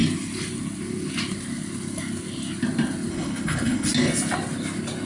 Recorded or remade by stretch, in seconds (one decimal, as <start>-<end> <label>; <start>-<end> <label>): 0.0-3.1 recorded; 3.1-3.9 remade; 3.9-5.1 recorded